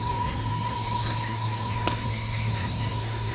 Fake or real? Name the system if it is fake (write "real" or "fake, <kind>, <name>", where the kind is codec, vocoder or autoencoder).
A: fake, codec, SNAC